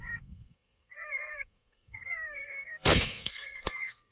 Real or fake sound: fake